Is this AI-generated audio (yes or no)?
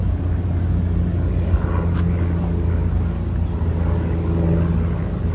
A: no